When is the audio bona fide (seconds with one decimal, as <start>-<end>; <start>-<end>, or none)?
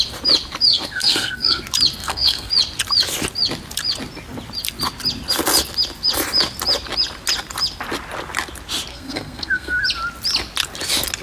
0.0-0.7; 1.6-2.0; 2.5-8.9; 9.8-11.2